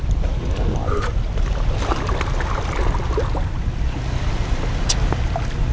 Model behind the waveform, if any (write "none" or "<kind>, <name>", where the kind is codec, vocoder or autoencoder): none